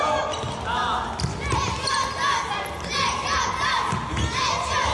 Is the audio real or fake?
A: real